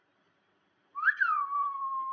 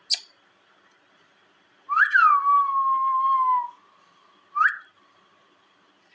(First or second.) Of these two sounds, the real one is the second